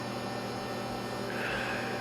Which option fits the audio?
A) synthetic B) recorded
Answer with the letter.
B